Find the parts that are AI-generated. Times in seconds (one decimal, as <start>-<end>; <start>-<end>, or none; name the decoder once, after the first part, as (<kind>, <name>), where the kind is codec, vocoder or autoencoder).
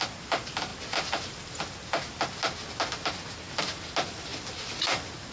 none